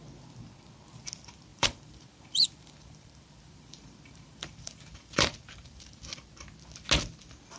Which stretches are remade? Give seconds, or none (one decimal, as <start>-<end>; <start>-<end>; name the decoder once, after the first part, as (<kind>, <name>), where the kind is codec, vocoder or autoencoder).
1.5-6.0 (vocoder, BigVGAN v2)